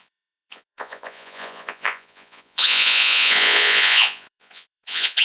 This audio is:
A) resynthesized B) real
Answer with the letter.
A